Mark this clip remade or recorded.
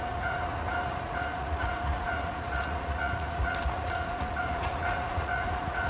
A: remade